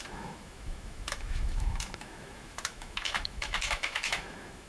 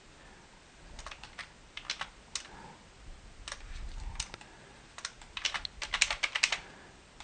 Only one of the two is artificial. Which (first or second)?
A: first